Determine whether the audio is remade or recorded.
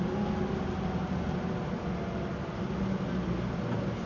recorded